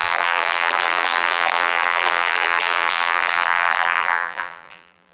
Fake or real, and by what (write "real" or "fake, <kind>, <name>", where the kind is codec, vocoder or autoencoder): fake, vocoder, BigVGAN v2